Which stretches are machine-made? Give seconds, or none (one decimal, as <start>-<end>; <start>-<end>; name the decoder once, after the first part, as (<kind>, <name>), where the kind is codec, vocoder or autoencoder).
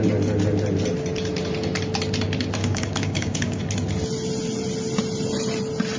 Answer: 2.6-3.6 (codec, DAC)